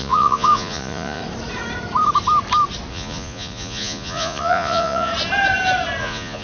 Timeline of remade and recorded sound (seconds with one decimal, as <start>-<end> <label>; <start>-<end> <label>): 0.0-1.2 remade; 1.2-2.9 recorded; 2.9-5.1 remade; 5.1-6.0 recorded; 6.0-6.4 remade